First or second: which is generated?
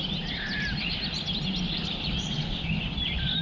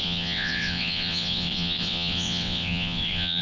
second